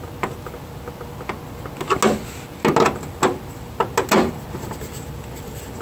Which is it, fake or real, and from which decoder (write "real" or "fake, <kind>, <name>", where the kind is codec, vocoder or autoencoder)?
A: real